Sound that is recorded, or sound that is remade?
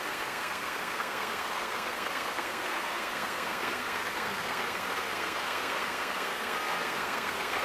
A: remade